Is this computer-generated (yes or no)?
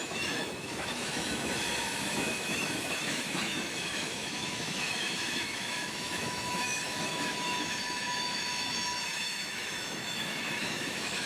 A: yes